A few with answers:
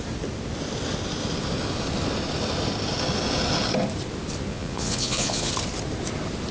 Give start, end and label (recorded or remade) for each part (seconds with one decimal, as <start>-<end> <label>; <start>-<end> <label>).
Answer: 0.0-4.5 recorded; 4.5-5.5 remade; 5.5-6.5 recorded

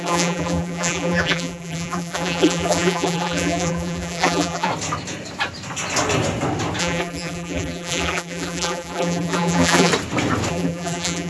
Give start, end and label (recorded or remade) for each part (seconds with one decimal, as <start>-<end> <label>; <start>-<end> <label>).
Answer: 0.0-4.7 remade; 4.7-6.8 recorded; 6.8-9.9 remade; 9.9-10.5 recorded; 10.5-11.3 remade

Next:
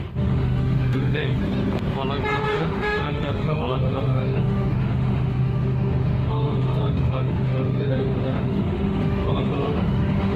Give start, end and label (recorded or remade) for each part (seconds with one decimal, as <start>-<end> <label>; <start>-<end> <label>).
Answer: 0.0-1.4 remade; 1.4-2.4 recorded; 2.4-10.4 remade

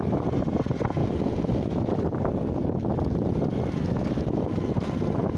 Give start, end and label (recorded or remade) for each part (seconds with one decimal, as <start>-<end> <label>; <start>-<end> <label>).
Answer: 0.0-5.4 recorded

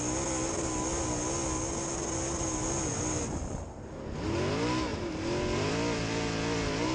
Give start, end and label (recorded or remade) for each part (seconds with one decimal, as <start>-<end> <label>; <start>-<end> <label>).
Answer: 0.0-2.9 recorded; 2.9-3.9 remade; 3.9-4.9 recorded; 4.9-6.0 remade; 6.0-6.9 recorded

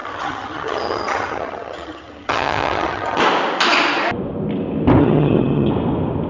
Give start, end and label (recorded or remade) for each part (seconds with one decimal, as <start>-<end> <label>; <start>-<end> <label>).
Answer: 0.0-3.2 remade; 3.2-5.0 recorded; 5.0-5.7 remade; 5.7-6.3 recorded

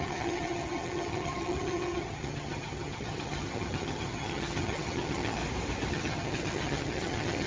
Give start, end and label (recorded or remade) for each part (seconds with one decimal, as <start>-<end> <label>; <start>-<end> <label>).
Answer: 0.0-5.4 remade; 5.4-5.9 recorded; 5.9-7.5 remade